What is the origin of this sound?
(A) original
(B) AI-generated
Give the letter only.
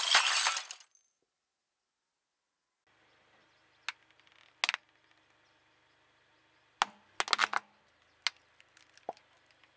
A